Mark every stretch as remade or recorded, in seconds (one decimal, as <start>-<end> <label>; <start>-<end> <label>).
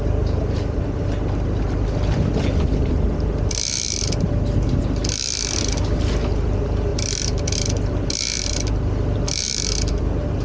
0.0-10.4 recorded